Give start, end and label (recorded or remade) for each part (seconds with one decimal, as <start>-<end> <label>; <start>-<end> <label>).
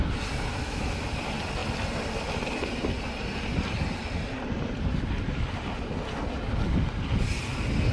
0.0-0.5 recorded; 0.5-1.1 remade; 1.1-7.9 recorded